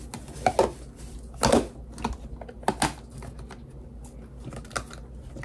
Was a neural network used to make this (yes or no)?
no